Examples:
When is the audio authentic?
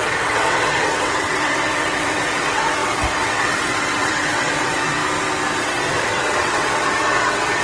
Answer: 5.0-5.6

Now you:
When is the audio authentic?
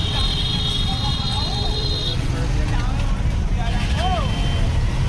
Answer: 2.3-5.1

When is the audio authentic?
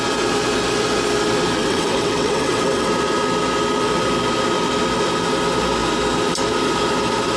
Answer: 0.0-1.6; 2.9-7.4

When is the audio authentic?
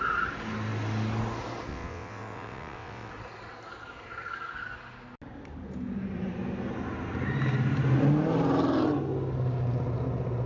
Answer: 0.0-1.7; 3.1-10.5